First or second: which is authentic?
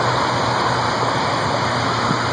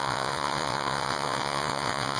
first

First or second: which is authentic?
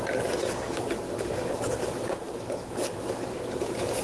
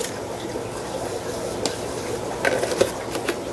second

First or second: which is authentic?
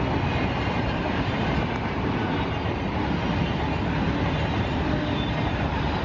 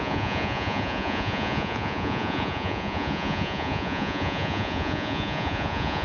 first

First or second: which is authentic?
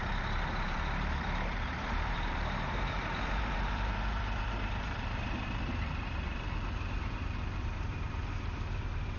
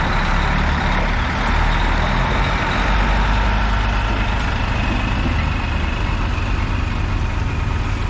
second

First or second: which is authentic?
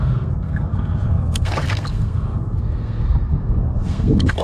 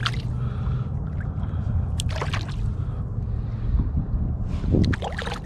second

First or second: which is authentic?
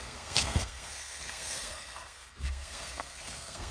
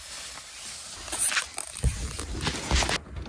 second